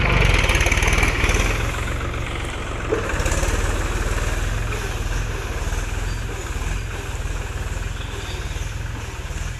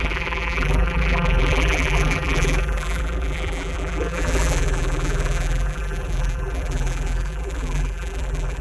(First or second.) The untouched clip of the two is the first